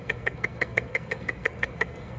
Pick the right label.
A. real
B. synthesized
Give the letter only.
B